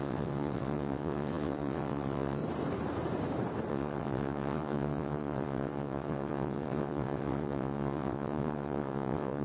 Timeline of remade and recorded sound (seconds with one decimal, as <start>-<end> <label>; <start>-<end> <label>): 0.0-2.4 remade; 2.4-3.7 recorded; 3.7-9.4 remade